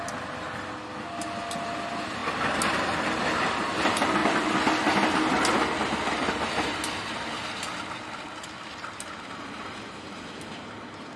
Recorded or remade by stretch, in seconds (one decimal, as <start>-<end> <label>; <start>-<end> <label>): 0.0-11.2 recorded